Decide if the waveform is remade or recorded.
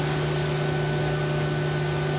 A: recorded